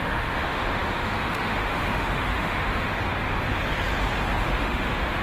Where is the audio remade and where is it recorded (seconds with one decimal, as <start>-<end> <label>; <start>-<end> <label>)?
0.0-2.9 remade; 2.9-4.4 recorded; 4.4-5.2 remade